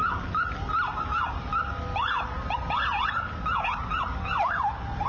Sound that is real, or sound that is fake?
real